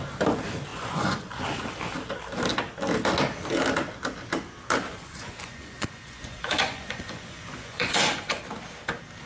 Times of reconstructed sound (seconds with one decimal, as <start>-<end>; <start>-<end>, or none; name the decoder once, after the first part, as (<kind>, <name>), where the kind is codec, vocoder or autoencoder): 0.7-1.4 (vocoder, Vocos); 4.9-8.4